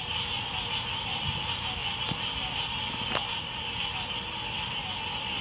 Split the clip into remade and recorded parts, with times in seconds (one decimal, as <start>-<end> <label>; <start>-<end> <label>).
0.0-5.4 recorded